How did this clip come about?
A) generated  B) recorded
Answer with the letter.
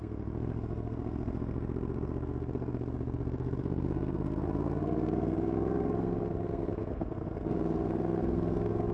A